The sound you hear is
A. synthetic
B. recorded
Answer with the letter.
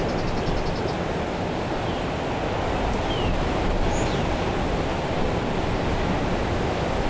B